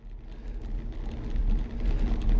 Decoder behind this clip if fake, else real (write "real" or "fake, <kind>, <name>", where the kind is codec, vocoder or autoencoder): real